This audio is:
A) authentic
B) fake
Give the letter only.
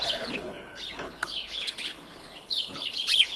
B